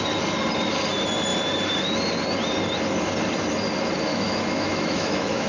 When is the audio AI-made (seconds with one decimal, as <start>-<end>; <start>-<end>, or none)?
4.1-5.5